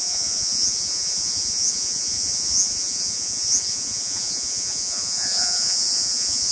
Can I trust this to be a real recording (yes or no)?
no